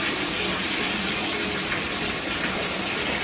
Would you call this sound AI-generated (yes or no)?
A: no